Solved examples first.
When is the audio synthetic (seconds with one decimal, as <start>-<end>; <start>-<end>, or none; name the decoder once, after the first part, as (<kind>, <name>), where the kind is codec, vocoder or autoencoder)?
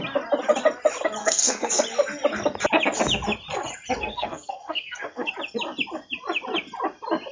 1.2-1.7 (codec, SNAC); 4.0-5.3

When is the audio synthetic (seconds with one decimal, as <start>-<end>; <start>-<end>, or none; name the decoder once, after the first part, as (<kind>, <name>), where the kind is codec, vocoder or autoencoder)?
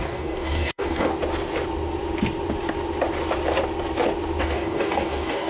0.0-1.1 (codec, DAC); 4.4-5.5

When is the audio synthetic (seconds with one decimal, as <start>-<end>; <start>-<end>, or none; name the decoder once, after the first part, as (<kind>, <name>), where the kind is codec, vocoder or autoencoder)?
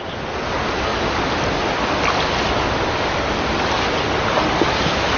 none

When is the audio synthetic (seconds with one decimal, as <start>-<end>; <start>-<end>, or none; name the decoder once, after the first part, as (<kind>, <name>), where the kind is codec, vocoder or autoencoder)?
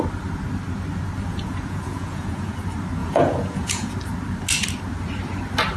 1.3-2.5 (vocoder, Vocos); 3.0-3.9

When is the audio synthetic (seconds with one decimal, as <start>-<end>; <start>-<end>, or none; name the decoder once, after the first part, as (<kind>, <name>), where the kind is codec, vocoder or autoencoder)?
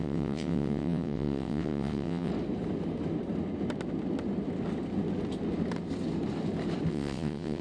0.0-2.3 (vocoder, WaveNeXt); 6.9-7.6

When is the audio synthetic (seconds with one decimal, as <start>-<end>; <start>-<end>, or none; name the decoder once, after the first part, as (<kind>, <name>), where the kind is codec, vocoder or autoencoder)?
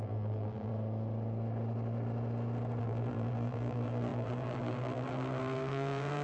0.0-0.7 (vocoder, BigVGAN v2); 2.8-6.2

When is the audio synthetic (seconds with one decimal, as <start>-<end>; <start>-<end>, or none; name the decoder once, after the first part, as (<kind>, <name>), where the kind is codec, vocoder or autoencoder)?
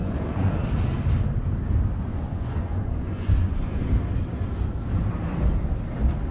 0.0-0.5 (vocoder, Vocos); 2.1-3.9